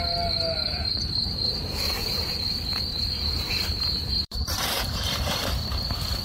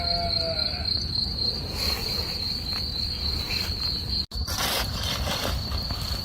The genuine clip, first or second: second